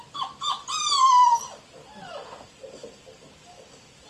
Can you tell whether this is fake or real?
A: real